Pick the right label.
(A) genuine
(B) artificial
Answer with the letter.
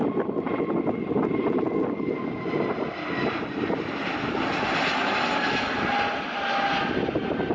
A